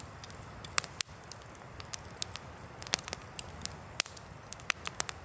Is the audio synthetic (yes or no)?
no